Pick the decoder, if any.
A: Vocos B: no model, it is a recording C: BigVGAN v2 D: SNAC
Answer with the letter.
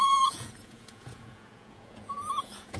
A